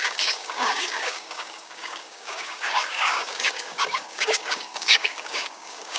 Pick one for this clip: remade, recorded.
remade